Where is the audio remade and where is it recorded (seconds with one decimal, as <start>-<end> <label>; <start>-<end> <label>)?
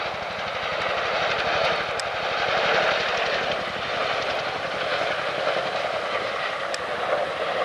0.0-7.6 recorded